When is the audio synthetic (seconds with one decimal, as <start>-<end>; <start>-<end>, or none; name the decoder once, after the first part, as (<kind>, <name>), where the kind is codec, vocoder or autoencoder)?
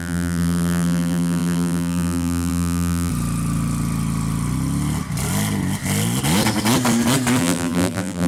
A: 0.0-3.1 (vocoder, BigVGAN v2); 7.4-8.3